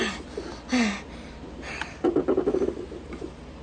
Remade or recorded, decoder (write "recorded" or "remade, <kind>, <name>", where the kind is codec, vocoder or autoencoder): recorded